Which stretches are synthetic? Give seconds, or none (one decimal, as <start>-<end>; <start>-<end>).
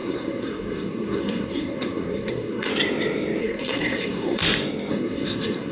0.0-2.7; 3.4-4.4; 4.9-5.7